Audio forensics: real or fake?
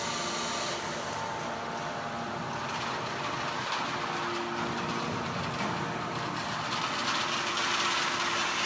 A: real